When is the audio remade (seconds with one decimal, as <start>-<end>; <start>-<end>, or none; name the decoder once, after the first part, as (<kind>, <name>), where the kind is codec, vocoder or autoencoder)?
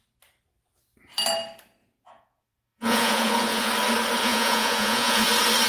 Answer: 1.8-3.7 (vocoder, Vocos); 4.2-5.3